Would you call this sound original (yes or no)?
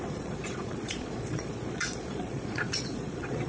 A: no